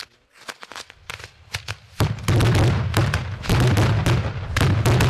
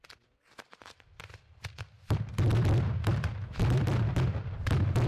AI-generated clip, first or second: second